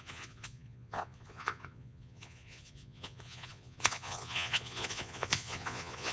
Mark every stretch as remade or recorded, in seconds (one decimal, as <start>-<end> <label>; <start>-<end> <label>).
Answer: 0.0-6.1 remade